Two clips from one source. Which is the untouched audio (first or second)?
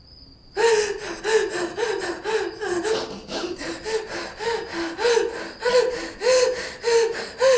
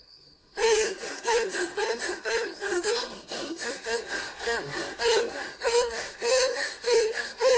first